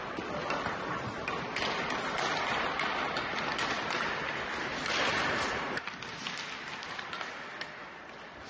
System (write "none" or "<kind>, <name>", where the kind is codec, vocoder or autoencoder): vocoder, BigVGAN v2